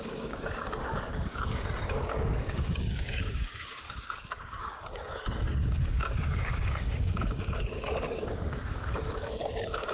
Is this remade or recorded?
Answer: remade